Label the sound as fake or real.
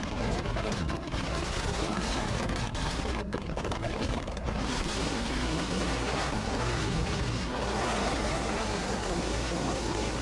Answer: fake